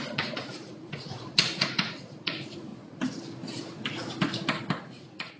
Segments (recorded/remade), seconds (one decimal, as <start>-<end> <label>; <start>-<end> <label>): 0.0-2.7 remade; 2.7-4.9 recorded; 4.9-5.4 remade